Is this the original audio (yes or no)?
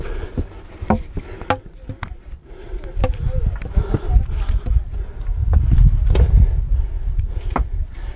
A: yes